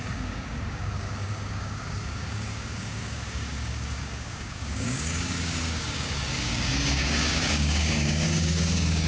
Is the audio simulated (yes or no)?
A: yes